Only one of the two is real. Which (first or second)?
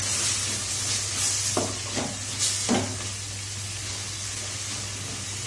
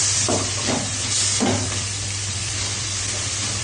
first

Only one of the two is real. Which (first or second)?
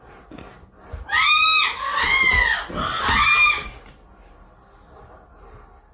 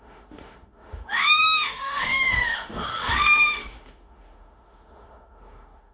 first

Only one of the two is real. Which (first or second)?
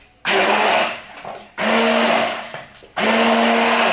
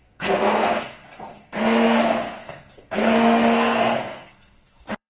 first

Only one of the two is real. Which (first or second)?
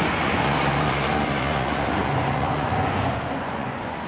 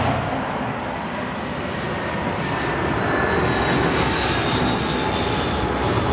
second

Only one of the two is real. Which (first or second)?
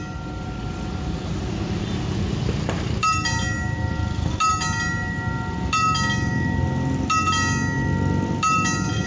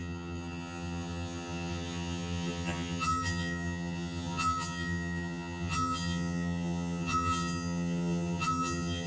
first